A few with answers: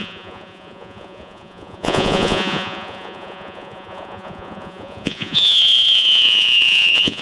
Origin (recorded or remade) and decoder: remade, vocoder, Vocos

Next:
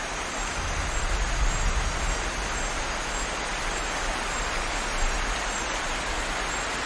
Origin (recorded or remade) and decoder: recorded